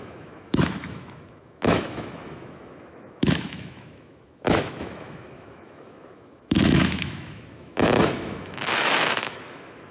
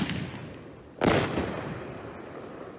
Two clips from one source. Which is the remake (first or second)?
first